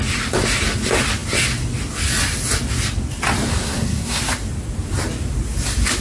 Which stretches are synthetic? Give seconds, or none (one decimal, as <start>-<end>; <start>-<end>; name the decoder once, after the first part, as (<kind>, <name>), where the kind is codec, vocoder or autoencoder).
3.5-4.2 (codec, SNAC)

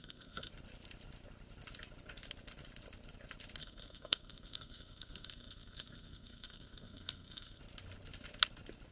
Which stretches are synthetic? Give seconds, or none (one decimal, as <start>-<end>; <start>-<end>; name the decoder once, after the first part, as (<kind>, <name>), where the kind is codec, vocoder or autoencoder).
0.0-0.5 (codec, SNAC); 3.6-7.6

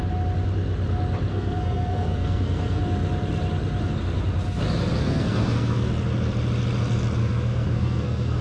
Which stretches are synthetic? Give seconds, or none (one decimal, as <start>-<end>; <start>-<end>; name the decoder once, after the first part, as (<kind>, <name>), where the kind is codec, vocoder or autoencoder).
1.3-2.8 (codec, SNAC); 5.0-5.9; 7.2-8.4

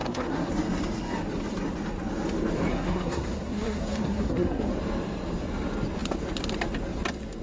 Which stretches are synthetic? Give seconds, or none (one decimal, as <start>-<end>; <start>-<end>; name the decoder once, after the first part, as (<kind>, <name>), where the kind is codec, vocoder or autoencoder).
0.0-0.5 (codec, SNAC); 2.7-4.7

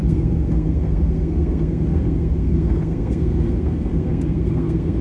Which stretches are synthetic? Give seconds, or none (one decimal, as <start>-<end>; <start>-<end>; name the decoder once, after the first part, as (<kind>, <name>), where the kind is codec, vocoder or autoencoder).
0.0-5.0 (codec, SNAC)

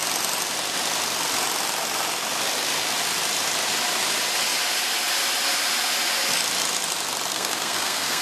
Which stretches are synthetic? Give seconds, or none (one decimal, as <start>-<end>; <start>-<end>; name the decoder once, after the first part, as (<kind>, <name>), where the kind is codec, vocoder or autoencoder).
7.3-8.2 (codec, SNAC)